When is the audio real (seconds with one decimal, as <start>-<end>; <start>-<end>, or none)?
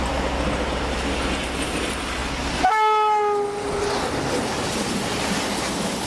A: 0.0-6.1